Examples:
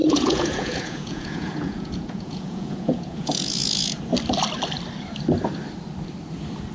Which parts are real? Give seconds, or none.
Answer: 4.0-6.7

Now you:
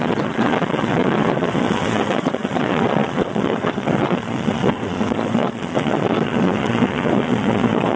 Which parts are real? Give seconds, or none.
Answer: none

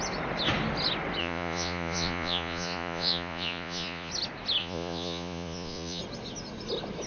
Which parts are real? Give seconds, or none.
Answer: 0.0-1.2; 4.1-4.6; 6.0-7.1

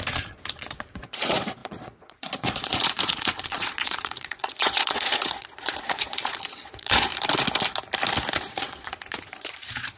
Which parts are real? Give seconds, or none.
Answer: 7.1-8.3